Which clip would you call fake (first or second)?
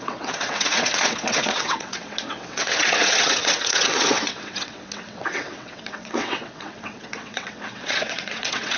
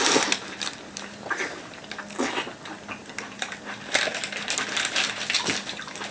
first